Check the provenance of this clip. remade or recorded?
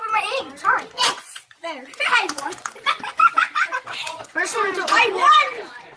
remade